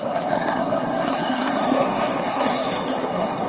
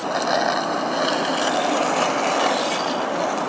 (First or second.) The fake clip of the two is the first